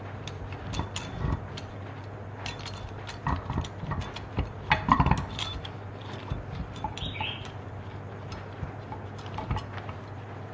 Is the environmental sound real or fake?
real